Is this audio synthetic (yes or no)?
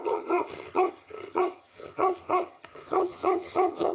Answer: yes